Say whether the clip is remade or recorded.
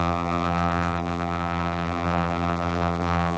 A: remade